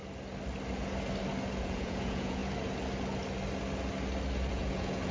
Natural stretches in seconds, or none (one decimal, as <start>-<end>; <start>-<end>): 0.0-1.6; 2.4-4.5

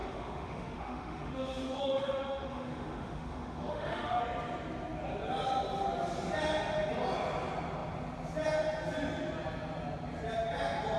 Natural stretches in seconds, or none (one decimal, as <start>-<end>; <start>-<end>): 4.2-11.0